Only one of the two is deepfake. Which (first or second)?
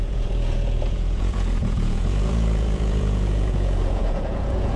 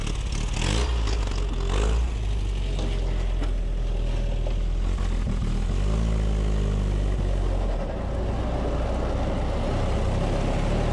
first